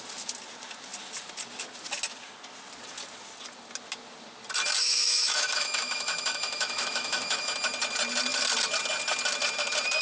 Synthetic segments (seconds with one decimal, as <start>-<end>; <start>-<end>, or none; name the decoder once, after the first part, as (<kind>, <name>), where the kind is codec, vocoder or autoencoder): 4.8-7.5 (autoencoder, DAC-VAE)